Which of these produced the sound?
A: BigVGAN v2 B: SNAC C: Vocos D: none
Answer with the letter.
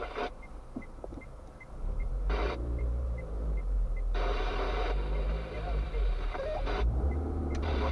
A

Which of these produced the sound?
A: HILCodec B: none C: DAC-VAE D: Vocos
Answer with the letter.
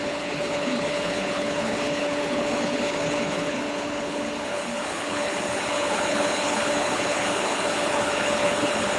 A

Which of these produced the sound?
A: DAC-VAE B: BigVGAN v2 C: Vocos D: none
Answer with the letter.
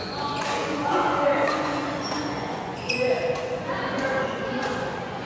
C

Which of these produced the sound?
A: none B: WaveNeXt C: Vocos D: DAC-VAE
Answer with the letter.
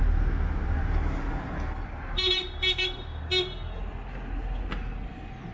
A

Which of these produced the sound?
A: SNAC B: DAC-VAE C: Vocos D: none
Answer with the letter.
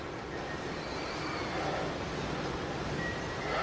D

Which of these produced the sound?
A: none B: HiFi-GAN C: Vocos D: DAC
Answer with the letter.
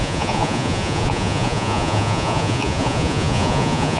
C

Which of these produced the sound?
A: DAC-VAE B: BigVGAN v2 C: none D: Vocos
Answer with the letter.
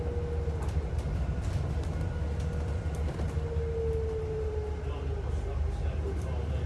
C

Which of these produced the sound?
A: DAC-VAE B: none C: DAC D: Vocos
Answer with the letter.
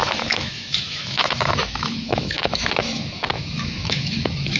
A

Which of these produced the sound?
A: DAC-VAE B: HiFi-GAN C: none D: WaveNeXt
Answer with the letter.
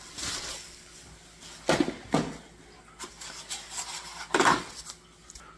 C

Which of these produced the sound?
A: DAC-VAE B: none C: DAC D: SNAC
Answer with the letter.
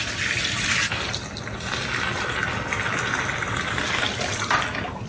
B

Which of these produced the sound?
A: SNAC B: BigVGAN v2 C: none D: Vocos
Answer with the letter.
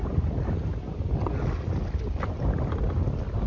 C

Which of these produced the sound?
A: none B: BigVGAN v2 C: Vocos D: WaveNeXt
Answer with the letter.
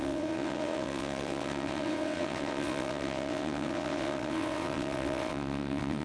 D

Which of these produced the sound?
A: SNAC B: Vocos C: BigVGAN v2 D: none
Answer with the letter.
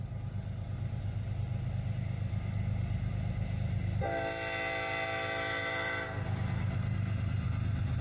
D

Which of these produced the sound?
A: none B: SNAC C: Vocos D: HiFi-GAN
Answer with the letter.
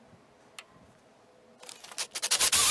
A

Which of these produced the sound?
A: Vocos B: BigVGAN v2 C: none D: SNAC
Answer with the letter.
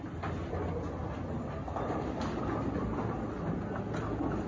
C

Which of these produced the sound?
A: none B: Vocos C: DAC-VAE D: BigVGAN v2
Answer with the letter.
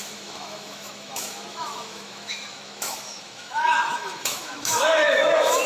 C